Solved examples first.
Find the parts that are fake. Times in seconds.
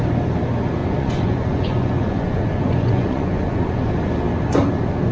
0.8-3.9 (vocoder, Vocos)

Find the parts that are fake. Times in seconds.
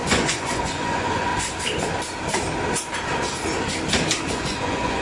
0.0-1.3 (vocoder, Vocos); 4.3-5.0